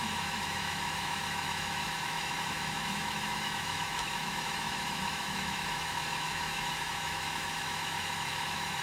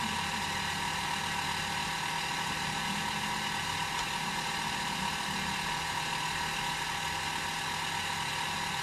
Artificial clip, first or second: first